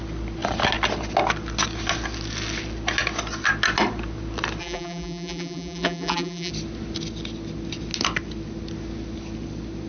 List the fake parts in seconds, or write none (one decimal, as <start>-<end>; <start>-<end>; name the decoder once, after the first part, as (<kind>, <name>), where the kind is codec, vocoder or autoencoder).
4.6-6.5 (vocoder, BigVGAN v2)